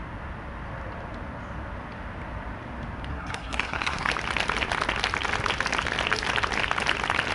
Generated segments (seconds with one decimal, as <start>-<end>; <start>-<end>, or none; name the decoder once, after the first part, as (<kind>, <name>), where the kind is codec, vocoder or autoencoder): 3.1-4.1 (codec, SNAC)